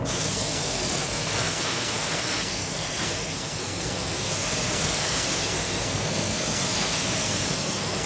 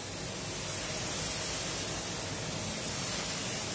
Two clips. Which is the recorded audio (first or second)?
second